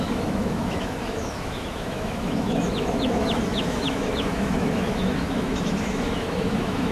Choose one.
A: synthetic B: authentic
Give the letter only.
A